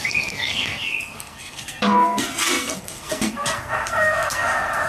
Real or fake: fake